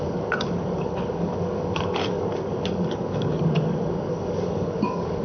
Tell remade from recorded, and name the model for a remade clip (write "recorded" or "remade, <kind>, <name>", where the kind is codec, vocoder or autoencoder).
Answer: remade, codec, DAC